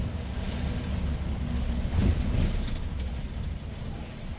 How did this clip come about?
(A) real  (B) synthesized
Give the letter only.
A